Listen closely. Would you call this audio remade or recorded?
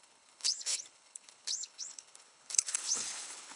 remade